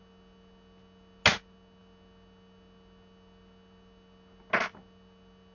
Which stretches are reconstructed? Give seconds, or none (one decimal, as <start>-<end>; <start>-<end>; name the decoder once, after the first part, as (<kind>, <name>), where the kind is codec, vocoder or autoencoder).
none